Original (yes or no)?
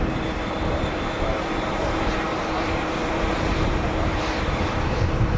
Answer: no